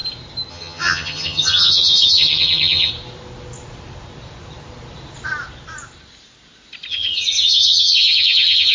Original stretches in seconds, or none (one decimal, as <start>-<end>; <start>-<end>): 0.0-0.5; 2.9-6.9

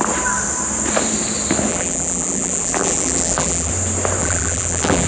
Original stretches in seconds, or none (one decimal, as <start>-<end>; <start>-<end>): 0.0-1.7; 3.7-4.2

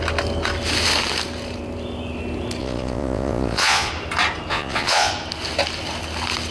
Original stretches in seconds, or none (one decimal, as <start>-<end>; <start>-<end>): 0.0-2.6; 3.9-4.5; 5.1-6.5

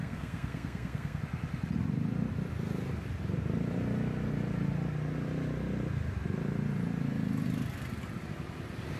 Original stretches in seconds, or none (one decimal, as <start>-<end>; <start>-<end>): 1.2-9.0

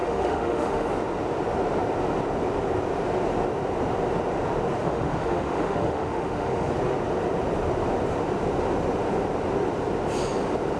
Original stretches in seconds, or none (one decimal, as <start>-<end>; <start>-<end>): 0.9-4.8; 6.7-10.8

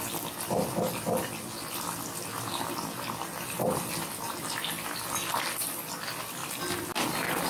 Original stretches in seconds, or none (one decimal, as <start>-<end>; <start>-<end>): 0.0-7.5

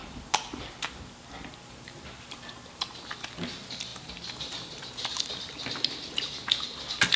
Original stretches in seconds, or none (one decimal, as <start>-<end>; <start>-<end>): 0.0-2.9; 3.9-4.9